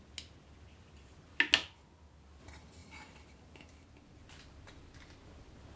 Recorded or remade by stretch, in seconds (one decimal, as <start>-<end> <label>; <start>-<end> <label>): 0.0-5.8 recorded